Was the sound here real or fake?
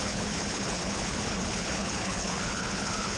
fake